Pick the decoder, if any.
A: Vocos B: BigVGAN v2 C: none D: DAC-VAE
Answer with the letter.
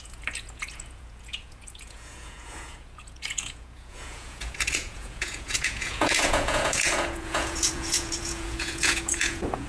A